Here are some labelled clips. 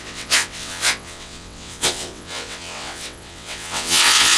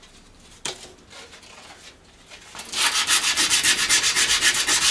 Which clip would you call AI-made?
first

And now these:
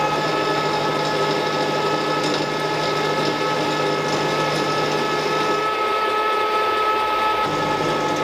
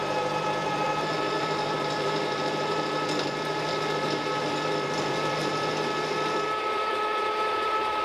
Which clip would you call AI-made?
second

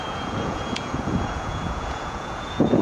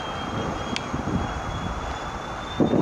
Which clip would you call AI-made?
first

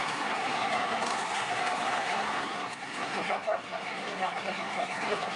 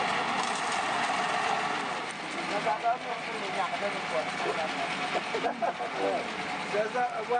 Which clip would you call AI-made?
first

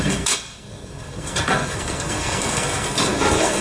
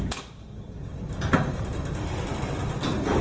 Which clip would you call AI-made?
first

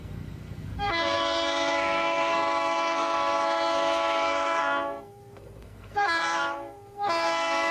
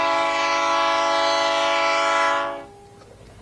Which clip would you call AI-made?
first